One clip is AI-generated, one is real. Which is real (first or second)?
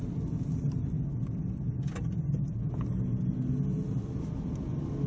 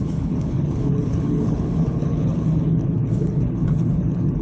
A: first